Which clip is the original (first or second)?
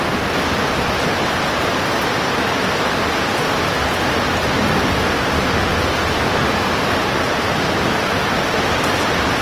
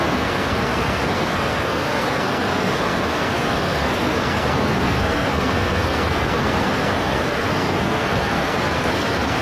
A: first